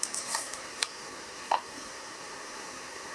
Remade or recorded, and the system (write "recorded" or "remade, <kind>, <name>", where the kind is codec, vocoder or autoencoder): remade, codec, SNAC